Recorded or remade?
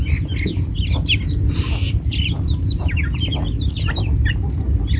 recorded